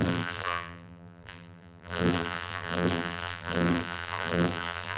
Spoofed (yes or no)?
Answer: yes